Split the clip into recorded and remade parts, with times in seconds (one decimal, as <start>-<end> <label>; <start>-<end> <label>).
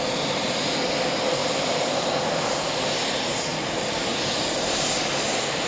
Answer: 0.0-1.4 recorded; 1.4-2.3 remade; 2.3-3.5 recorded; 3.5-4.1 remade; 4.1-5.7 recorded